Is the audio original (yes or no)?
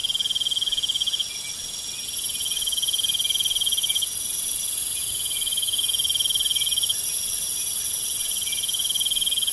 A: yes